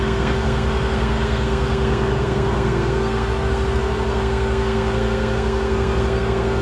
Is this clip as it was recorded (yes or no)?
no